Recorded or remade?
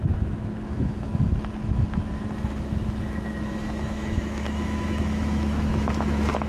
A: remade